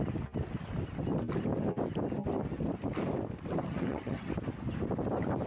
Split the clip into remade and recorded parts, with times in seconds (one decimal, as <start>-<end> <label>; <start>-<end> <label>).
0.0-3.6 recorded; 3.6-4.3 remade; 4.3-5.5 recorded